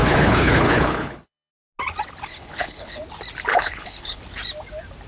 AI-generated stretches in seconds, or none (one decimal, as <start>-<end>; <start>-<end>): 0.0-1.5; 2.3-3.0; 3.5-4.2